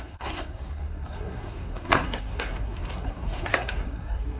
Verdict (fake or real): fake